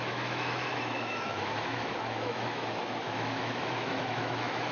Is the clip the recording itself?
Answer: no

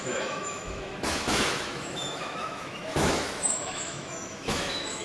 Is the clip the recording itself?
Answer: no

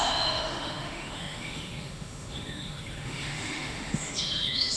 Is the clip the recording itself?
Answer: no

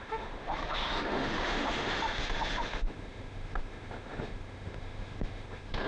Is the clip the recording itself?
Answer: no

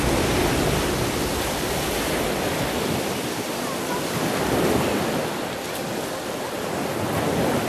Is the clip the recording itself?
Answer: yes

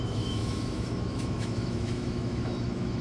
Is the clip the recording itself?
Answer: no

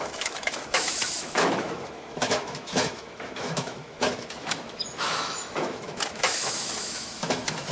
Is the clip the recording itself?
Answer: no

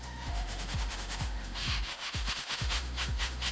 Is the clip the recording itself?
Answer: no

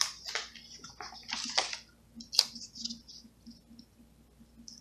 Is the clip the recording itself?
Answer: yes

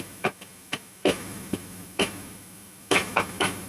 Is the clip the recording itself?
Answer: no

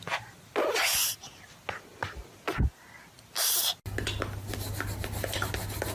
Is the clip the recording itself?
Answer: yes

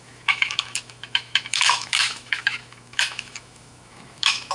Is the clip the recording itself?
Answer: no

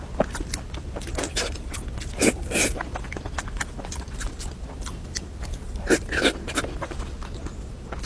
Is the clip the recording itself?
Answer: yes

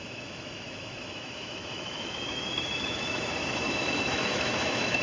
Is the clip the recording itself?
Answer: no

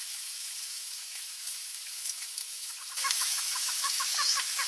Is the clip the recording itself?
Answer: no